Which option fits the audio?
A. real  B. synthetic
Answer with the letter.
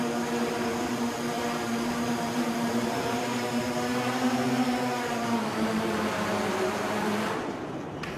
B